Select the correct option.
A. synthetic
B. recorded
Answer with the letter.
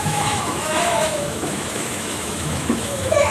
A